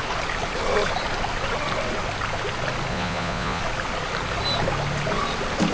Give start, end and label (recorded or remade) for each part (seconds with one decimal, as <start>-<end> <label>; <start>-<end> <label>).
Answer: 0.0-2.9 recorded; 2.9-3.6 remade; 3.6-5.7 recorded